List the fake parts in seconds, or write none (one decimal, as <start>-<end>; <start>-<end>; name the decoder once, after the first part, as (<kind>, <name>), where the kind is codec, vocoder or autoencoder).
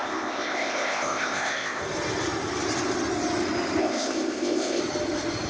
0.0-1.8 (codec, ZipCodec); 3.8-4.8